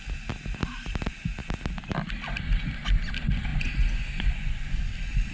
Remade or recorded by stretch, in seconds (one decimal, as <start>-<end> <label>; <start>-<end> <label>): 0.0-3.5 recorded; 3.5-4.8 remade; 4.8-5.3 recorded